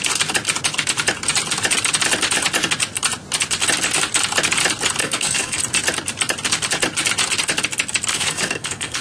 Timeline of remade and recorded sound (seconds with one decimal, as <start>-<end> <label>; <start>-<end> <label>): 0.0-5.0 recorded; 5.0-5.6 remade; 5.6-8.1 recorded; 8.1-9.0 remade